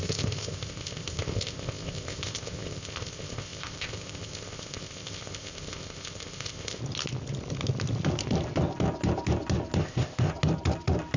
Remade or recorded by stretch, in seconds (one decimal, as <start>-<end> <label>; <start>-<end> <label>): 0.0-6.8 remade; 6.8-9.8 recorded; 9.8-10.3 remade; 10.3-11.2 recorded